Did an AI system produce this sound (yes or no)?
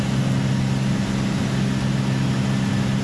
no